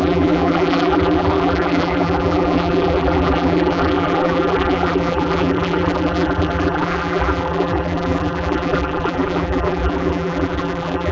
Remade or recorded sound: remade